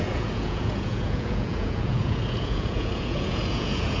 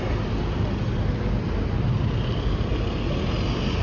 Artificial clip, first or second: first